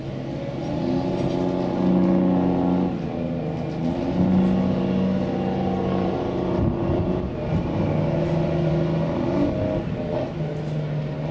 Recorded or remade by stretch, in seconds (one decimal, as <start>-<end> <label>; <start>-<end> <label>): 0.0-11.3 recorded